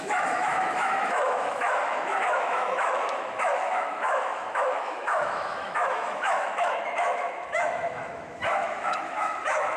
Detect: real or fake fake